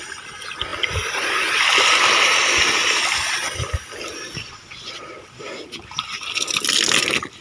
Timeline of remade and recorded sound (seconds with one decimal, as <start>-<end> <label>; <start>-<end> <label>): 0.0-4.4 recorded; 4.4-5.1 remade; 5.1-7.4 recorded